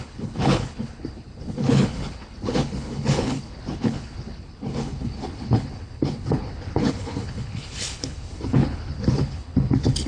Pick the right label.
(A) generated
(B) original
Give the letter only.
A